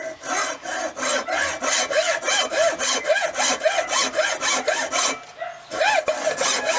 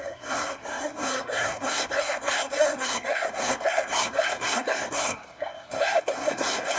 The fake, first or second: second